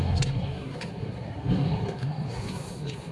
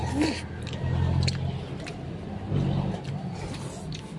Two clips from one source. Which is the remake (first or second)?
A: first